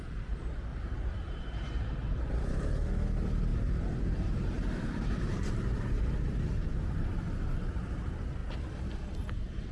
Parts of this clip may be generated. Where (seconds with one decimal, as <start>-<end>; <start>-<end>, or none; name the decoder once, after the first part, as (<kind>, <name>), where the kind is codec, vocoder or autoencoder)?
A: 0.7-2.7 (vocoder, BigVGAN v2); 3.5-6.7